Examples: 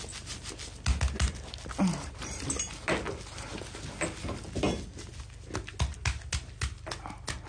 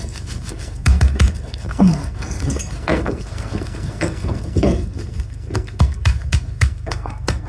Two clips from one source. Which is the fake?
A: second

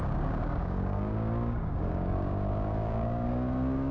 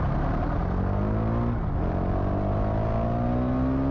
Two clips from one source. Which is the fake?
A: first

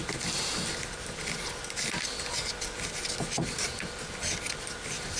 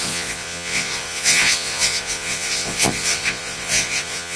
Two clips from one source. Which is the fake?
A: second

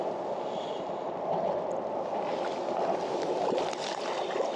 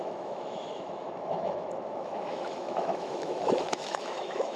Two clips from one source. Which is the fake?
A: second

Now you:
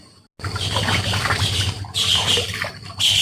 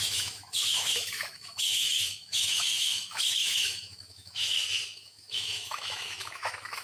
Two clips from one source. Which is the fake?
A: second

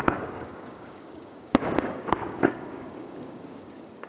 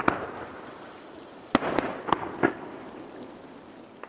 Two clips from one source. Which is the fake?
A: first